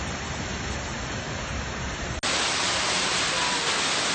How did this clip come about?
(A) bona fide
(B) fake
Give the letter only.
A